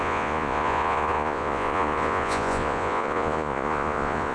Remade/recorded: remade